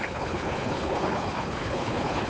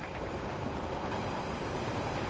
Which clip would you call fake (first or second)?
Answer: first